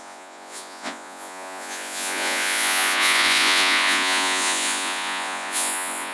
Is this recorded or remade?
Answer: remade